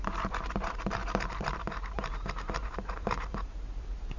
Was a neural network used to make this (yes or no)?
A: yes